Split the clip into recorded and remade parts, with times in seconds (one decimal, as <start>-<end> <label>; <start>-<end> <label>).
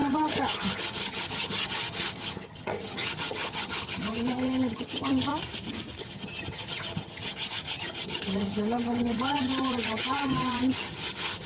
0.0-5.3 remade; 5.3-6.0 recorded; 6.0-11.5 remade